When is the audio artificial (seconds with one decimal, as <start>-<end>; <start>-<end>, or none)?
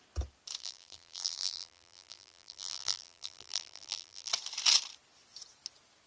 0.6-4.3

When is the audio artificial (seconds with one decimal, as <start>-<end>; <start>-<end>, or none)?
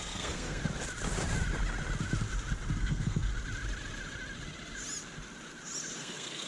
0.0-0.6; 2.8-3.3; 6.0-6.5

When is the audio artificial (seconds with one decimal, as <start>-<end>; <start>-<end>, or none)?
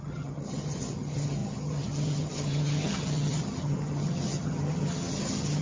0.0-5.6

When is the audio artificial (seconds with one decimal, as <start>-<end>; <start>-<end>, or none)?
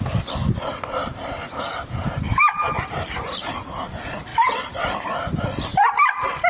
2.3-3.5; 4.3-5.0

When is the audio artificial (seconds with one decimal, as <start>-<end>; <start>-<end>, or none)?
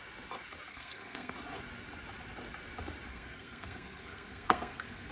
0.7-1.3; 3.1-5.1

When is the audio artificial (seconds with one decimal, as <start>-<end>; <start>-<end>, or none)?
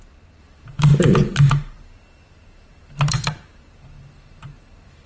0.0-5.1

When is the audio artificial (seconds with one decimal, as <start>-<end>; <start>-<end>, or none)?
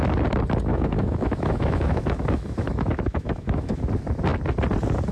0.7-3.8